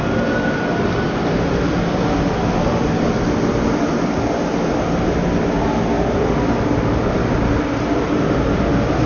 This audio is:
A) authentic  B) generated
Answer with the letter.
A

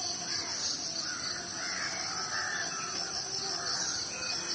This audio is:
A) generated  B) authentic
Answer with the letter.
B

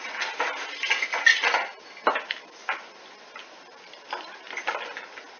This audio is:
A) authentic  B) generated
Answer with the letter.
A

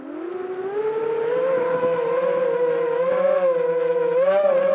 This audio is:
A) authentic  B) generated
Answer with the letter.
A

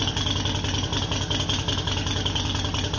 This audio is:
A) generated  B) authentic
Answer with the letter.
B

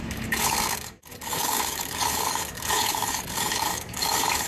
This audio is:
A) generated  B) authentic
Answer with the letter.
A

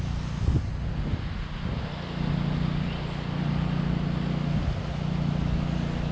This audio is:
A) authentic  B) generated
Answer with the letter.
A